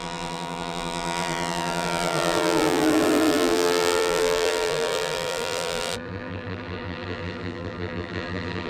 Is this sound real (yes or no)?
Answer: no